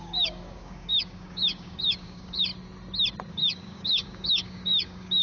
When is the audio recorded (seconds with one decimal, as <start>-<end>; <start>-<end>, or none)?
2.5-3.3